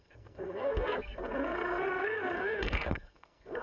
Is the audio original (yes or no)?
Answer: no